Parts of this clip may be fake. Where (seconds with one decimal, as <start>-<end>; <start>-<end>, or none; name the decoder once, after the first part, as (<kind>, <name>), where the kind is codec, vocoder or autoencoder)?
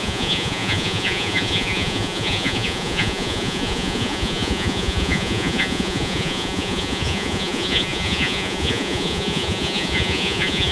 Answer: 0.0-10.7 (vocoder, Vocos)